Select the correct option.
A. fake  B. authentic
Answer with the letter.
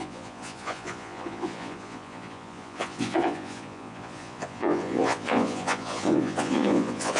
A